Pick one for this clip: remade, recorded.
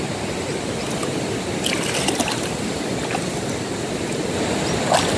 recorded